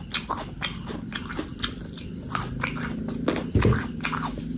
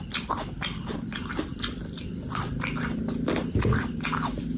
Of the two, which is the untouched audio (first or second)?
first